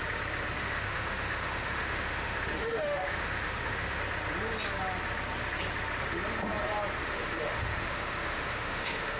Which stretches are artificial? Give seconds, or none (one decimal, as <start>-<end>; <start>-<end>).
0.6-4.0; 7.0-9.2

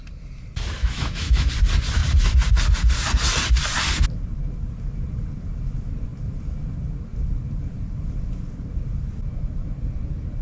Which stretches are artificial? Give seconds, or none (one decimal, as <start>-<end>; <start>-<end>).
0.8-1.5

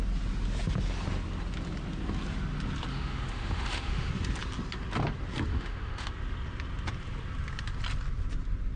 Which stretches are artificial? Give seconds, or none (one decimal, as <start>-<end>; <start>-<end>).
2.9-4.1; 5.5-6.1